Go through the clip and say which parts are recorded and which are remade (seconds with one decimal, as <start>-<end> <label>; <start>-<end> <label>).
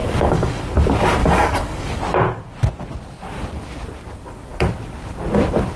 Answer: 0.0-0.6 remade; 0.6-1.2 recorded; 1.2-2.0 remade; 2.0-5.8 recorded